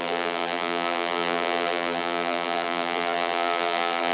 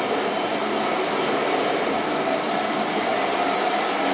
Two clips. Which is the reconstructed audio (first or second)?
first